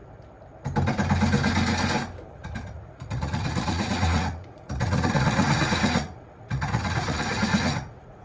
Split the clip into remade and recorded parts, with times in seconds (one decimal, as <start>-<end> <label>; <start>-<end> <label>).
0.0-2.3 recorded; 2.3-8.2 remade